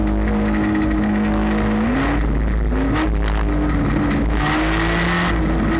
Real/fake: real